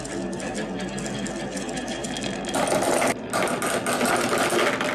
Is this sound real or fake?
real